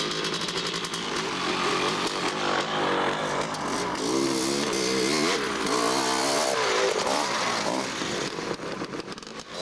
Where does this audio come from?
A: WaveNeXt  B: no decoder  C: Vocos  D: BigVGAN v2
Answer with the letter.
B